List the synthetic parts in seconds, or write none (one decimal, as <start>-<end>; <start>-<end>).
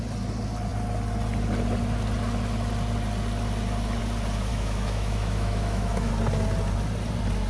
4.5-6.1